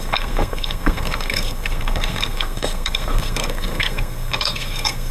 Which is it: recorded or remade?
remade